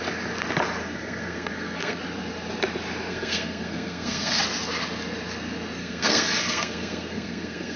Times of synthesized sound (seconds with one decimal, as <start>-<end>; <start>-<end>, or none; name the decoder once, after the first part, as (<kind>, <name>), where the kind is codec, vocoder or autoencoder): 0.8-2.0 (codec, SNAC); 3.1-4.4; 5.8-7.8